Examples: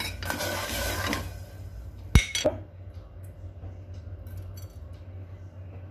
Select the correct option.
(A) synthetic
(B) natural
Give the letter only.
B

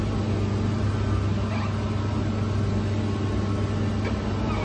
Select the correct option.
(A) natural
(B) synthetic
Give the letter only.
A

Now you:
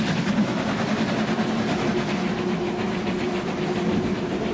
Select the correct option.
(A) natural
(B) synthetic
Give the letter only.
A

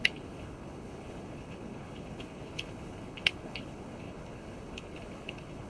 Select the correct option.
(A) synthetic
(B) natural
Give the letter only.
A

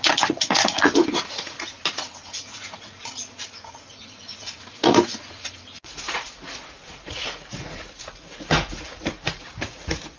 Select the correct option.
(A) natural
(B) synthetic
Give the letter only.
B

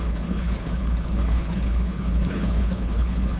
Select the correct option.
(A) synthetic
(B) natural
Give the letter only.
A